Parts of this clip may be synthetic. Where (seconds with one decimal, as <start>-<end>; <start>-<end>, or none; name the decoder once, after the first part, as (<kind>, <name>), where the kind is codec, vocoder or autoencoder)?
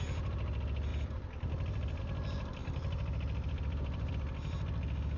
0.9-2.0 (vocoder, BigVGAN v2); 2.6-4.1